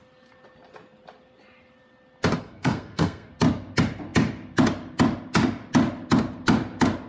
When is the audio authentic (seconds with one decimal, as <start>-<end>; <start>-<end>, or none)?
0.0-2.4; 3.3-7.1

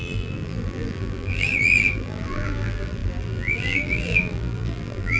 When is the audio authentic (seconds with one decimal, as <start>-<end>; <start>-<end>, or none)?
none

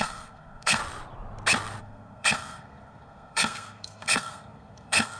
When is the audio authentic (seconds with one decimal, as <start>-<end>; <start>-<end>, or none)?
0.8-1.8

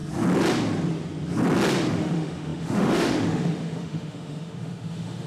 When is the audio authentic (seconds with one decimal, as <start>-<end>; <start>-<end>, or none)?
0.0-1.9

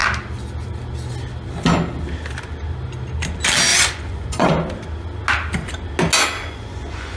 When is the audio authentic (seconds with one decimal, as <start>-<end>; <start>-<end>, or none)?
0.0-3.7; 4.5-6.4

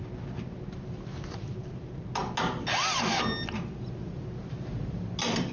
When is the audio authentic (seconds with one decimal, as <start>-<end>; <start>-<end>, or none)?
0.0-5.5

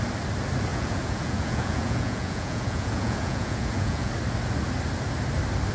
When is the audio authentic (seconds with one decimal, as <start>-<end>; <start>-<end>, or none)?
0.0-0.7; 4.1-5.7